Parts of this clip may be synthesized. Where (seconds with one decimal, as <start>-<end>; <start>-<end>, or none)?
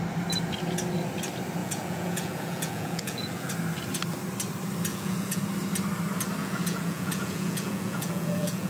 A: 1.6-3.5; 4.9-5.4; 6.4-8.7